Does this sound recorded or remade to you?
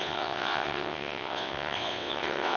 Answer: remade